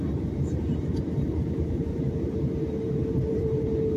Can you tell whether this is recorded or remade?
remade